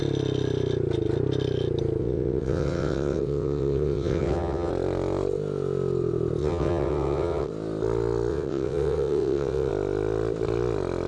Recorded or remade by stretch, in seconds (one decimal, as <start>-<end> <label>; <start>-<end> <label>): 0.0-2.0 recorded; 2.0-4.7 remade; 4.7-6.4 recorded; 6.4-7.5 remade; 7.5-8.3 recorded; 8.3-9.7 remade; 9.7-11.1 recorded